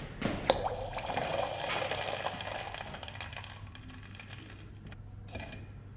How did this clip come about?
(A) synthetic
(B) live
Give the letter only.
B